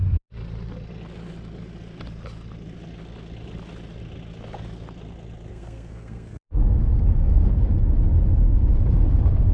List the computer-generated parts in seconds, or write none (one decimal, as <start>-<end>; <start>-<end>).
5.5-7.5